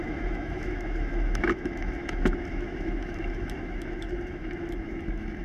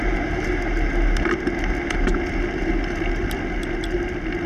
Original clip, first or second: second